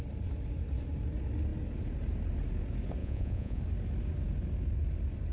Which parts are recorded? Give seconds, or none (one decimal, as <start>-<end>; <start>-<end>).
0.0-3.0; 3.6-5.3